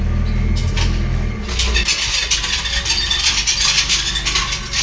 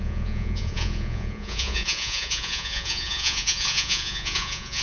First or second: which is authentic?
first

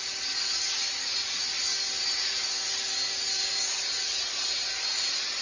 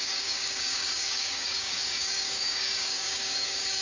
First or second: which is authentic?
first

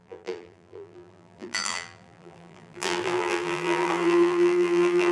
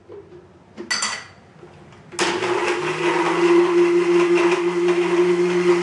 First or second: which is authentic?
second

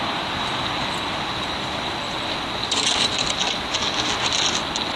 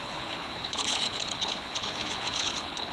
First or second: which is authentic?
first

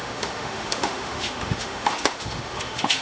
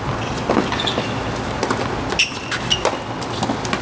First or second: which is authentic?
second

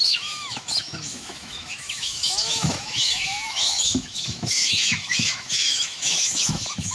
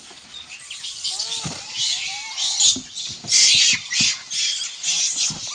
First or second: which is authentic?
second